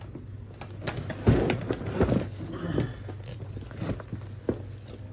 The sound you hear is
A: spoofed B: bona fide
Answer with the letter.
B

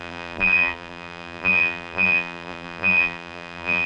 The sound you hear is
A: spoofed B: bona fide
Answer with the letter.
A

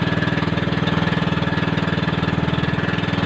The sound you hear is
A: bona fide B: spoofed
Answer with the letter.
A